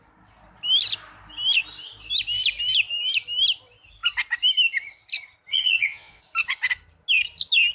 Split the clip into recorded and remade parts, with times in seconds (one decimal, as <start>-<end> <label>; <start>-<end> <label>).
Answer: 0.0-5.5 recorded; 5.5-6.2 remade; 6.2-7.7 recorded